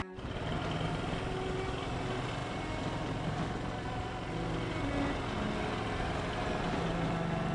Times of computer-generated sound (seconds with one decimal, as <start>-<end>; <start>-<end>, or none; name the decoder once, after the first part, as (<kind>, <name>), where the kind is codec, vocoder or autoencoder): none